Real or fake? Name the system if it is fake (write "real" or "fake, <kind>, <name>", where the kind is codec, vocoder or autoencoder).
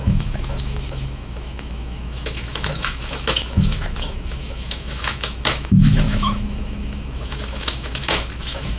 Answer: fake, autoencoder, DAC-VAE